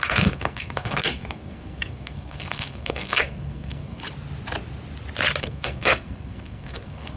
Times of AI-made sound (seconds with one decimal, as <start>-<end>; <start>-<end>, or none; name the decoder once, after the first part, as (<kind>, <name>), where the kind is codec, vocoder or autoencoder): 0.0-4.0 (codec, SNAC); 5.4-7.2